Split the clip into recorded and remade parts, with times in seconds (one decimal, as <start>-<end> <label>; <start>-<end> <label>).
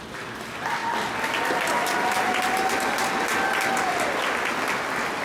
0.0-5.2 recorded